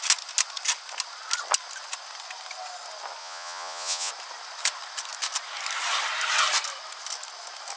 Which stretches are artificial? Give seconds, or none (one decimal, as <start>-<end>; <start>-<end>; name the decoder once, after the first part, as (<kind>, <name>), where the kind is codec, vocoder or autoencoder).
3.2-4.1 (vocoder, Vocos)